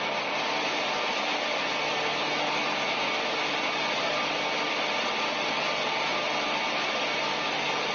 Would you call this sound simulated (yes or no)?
no